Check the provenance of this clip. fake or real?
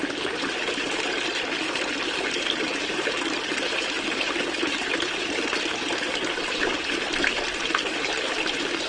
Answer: real